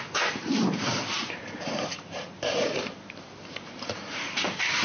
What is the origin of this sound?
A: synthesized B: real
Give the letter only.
A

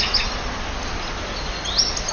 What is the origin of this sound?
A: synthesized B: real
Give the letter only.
B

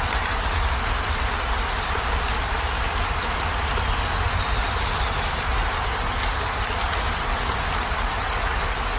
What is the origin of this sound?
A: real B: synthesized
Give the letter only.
A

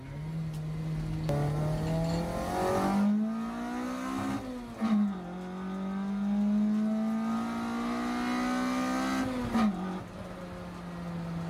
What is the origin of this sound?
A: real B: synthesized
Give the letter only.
A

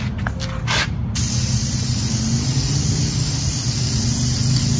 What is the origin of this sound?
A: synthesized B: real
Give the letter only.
B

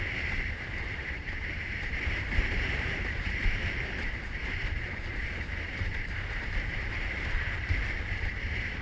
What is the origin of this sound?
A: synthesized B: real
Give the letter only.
A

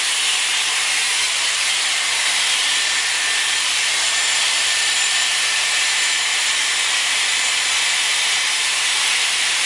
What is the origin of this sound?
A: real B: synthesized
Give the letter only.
B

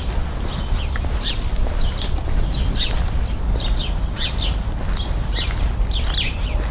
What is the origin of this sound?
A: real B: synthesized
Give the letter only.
A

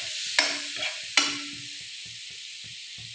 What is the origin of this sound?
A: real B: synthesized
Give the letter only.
A